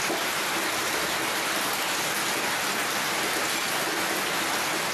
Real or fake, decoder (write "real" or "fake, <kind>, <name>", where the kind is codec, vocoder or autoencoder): real